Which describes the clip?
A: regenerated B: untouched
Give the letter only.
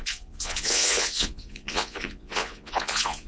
A